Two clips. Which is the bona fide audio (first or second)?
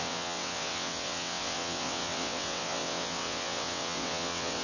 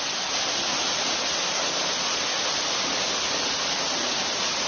second